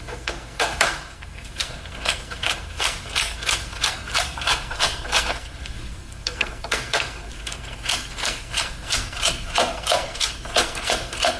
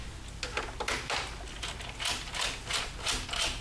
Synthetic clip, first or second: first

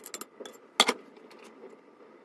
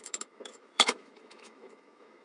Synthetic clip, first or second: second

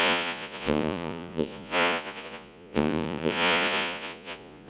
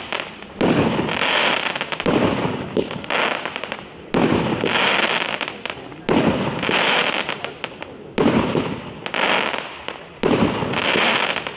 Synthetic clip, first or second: first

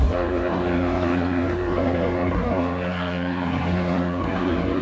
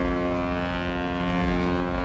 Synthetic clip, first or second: first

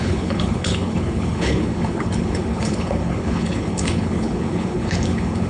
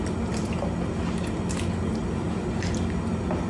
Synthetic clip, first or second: first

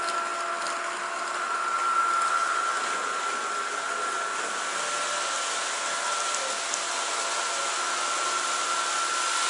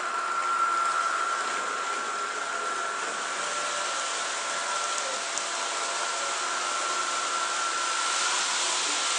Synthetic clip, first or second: second